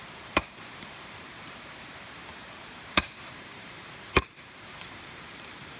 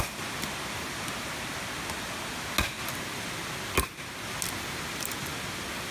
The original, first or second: second